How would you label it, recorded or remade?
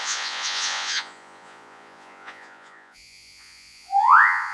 remade